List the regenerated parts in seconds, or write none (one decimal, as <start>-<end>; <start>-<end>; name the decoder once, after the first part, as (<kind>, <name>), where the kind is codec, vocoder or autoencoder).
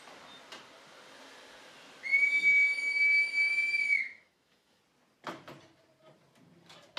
2.1-4.8 (autoencoder, DAC-VAE)